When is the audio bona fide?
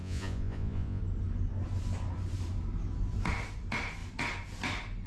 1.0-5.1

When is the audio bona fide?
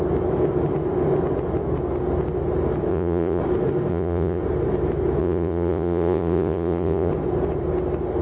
0.0-2.9; 3.4-3.9; 4.4-5.2; 7.1-8.2